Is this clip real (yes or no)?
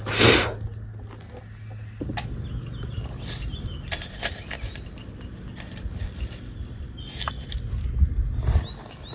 yes